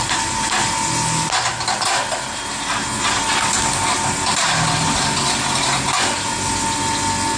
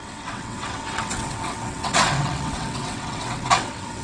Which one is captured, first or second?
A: first